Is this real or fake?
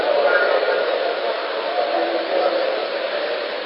real